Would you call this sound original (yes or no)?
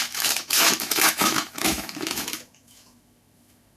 no